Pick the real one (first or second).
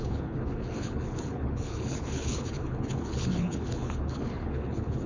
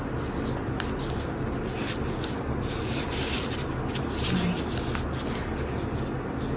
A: second